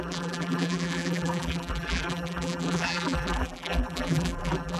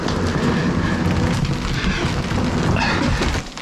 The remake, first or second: first